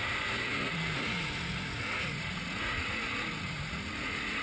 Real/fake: fake